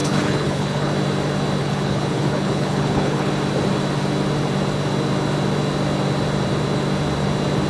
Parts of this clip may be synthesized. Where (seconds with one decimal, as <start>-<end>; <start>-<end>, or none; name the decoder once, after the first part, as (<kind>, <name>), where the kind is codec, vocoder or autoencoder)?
0.0-0.9 (codec, HILCodec); 1.6-3.3